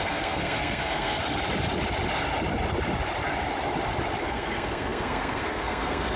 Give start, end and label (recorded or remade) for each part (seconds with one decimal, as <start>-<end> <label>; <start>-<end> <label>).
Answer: 0.0-1.2 remade; 1.2-4.2 recorded; 4.2-6.2 remade